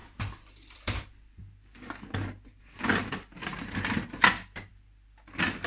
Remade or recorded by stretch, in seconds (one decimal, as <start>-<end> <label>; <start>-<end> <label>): 0.0-1.4 remade; 1.4-3.5 recorded; 3.5-4.7 remade; 4.7-5.7 recorded